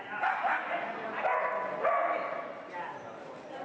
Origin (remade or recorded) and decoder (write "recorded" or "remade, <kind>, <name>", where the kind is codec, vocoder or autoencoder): recorded